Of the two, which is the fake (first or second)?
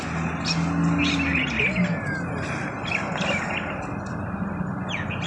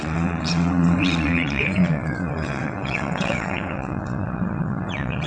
second